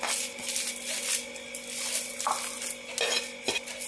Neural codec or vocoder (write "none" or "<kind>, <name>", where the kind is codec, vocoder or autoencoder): none